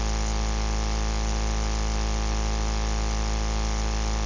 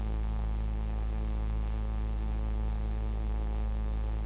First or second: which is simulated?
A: second